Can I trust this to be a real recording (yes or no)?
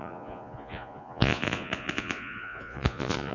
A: no